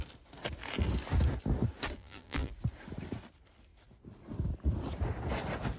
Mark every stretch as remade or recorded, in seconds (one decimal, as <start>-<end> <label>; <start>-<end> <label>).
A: 0.0-2.0 recorded; 2.0-2.5 remade; 2.5-5.8 recorded